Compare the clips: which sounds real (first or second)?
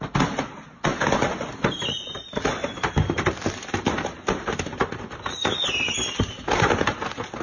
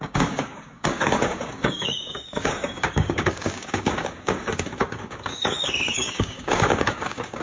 first